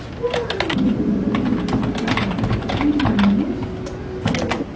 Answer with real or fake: real